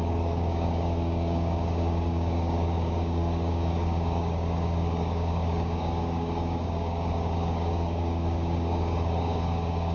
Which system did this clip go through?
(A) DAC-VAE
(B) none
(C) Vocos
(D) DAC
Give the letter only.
D